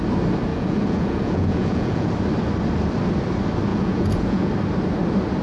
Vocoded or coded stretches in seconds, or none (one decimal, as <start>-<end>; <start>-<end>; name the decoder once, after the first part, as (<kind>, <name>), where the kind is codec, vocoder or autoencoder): 0.5-2.1 (vocoder, Vocos); 3.7-4.5